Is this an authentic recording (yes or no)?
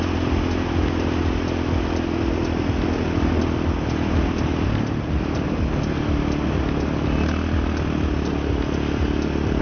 yes